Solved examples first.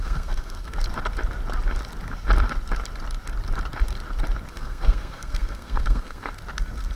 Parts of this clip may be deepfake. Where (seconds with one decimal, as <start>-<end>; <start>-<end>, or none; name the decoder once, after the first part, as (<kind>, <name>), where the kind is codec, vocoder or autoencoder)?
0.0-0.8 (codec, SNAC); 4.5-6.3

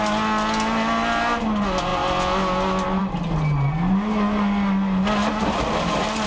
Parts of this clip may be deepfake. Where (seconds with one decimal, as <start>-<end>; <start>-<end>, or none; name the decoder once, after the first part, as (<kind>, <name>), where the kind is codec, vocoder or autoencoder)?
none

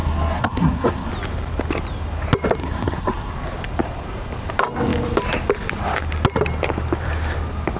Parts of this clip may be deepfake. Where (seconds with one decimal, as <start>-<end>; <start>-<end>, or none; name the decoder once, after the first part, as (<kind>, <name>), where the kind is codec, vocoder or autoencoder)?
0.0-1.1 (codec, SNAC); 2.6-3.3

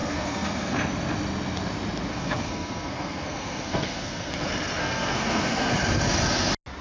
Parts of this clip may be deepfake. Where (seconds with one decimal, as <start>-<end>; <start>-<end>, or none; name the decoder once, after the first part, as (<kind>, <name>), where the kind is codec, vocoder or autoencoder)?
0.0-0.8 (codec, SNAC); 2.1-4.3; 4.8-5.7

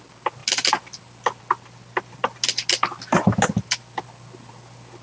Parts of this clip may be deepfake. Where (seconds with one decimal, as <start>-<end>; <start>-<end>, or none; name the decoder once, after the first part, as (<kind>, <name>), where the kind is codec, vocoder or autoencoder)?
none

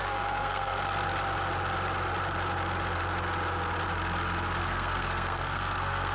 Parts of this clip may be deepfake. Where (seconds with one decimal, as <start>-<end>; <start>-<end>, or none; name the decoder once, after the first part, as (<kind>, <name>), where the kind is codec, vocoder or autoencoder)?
0.0-1.1 (codec, SNAC); 4.6-6.1

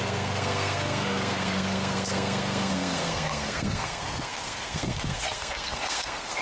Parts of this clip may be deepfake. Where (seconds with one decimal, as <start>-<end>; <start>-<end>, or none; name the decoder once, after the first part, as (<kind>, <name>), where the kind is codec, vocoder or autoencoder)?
0.0-6.4 (codec, SNAC)